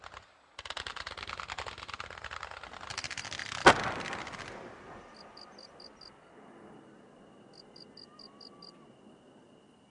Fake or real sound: real